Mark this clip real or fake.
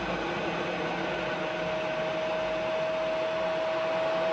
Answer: real